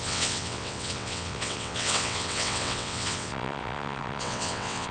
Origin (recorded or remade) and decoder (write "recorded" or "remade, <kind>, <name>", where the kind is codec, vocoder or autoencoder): remade, vocoder, WaveNeXt